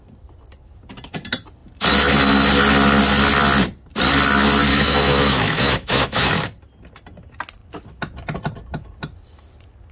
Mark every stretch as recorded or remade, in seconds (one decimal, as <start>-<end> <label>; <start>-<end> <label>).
0.0-4.7 recorded; 4.7-6.3 remade; 6.3-9.9 recorded